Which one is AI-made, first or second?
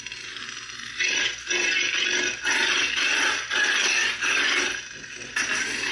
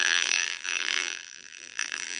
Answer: second